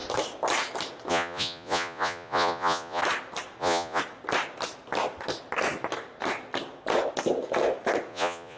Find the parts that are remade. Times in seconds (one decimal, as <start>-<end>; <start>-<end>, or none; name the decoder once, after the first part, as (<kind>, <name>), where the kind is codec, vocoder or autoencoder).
1.1-3.0 (vocoder, Vocos); 3.6-4.0; 8.1-8.6